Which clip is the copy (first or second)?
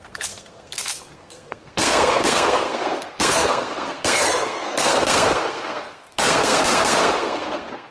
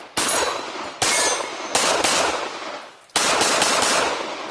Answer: first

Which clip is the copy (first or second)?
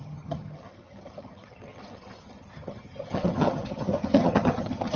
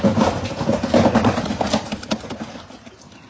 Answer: first